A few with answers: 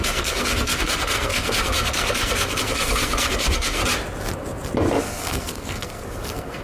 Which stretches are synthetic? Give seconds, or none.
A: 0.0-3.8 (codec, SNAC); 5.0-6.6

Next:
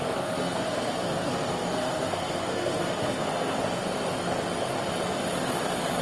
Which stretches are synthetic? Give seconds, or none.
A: 0.0-3.6 (codec, SNAC)

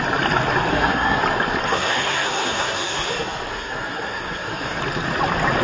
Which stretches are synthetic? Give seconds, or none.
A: 0.7-1.2 (codec, SNAC); 1.7-3.1; 3.5-4.8

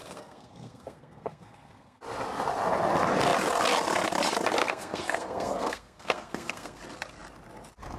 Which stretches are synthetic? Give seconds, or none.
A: 0.0-2.0 (codec, SNAC); 4.6-6.8